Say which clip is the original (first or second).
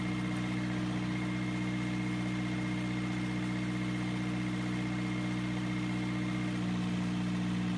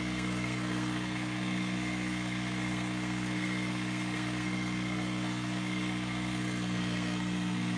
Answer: first